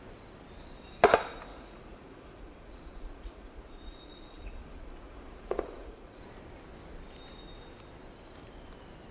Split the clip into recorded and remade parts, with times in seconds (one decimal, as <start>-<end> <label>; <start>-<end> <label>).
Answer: 0.0-1.5 recorded; 1.5-6.2 remade; 6.2-9.1 recorded